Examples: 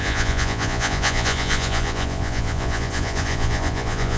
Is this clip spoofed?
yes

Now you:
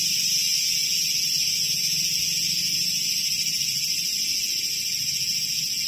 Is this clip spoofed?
no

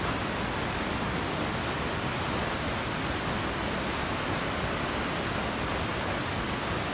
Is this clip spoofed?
no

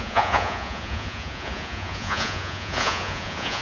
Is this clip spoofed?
yes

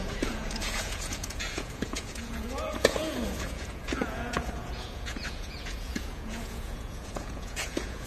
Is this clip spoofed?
yes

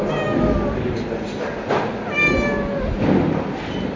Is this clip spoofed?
no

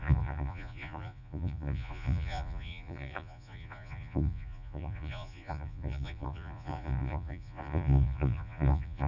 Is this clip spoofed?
yes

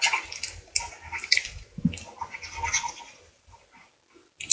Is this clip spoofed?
no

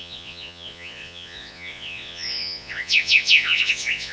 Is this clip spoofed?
yes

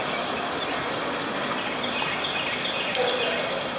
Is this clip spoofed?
no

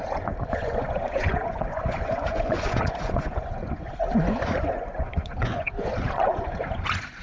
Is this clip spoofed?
yes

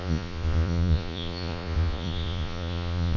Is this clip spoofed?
yes